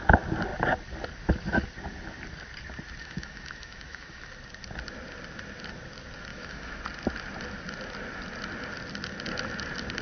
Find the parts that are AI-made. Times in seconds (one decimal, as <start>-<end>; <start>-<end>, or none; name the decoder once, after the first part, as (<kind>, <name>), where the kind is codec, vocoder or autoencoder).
3.0-4.3 (autoencoder, DAC-VAE); 6.3-6.8